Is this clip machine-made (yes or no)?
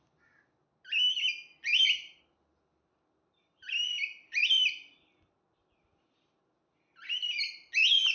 no